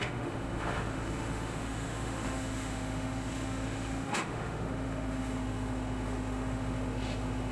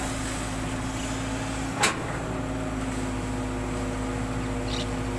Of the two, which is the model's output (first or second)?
first